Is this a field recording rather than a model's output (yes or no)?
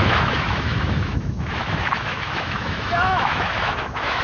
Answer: no